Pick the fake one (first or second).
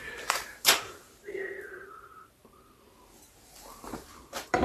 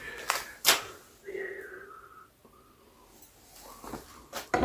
first